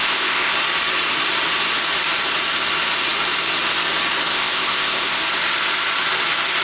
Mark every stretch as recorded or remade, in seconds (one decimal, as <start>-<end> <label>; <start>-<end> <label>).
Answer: 0.0-0.5 remade; 0.5-4.3 recorded; 4.3-5.2 remade; 5.2-6.6 recorded